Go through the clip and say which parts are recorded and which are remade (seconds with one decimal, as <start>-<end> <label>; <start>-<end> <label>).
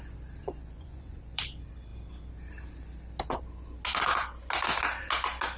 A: 0.0-0.4 recorded; 0.4-1.4 remade; 1.4-5.6 recorded